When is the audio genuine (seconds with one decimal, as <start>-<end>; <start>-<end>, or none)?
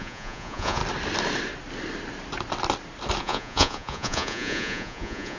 0.8-3.2